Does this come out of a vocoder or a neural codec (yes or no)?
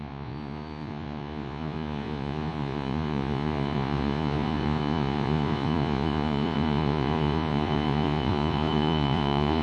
yes